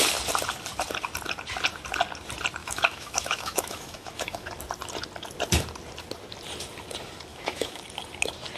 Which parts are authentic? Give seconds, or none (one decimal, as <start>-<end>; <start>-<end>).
0.0-2.6; 4.5-7.3; 7.8-8.6